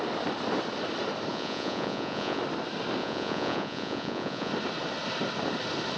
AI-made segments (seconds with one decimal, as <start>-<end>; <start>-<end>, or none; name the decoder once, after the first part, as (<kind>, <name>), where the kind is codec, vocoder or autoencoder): 1.3-2.4 (vocoder, Vocos); 3.0-4.5